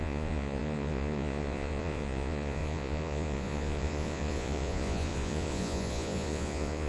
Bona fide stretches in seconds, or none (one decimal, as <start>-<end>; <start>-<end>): none